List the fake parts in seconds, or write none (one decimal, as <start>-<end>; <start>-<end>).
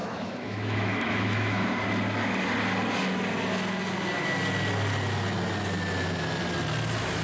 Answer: 0.0-1.8